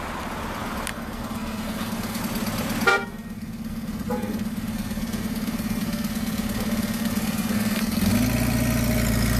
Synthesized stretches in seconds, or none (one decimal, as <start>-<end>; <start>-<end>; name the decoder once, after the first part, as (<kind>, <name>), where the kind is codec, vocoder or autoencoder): 0.9-2.2 (codec, SNAC); 2.9-8.1